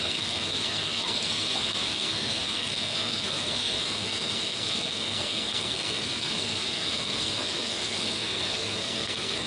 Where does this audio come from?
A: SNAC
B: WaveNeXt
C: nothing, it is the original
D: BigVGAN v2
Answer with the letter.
A